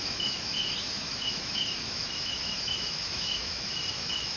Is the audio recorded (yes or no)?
no